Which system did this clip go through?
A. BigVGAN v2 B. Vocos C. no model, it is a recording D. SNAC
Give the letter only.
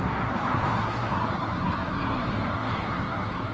D